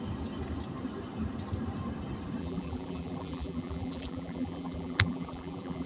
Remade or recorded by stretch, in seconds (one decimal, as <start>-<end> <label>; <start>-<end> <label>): 0.0-2.4 recorded; 2.4-5.9 remade